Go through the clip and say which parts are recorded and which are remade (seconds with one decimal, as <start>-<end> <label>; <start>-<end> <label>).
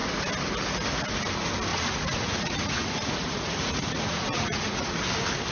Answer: 0.0-1.7 recorded; 1.7-5.0 remade; 5.0-5.5 recorded